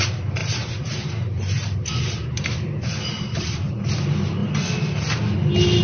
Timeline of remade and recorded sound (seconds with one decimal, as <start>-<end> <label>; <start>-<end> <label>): 0.0-0.4 recorded; 0.4-3.9 remade; 3.9-5.8 recorded